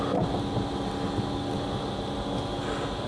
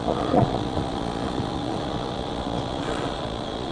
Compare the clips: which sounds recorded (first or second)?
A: first